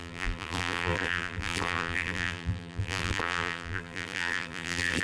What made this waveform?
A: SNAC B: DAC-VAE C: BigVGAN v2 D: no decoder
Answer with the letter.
C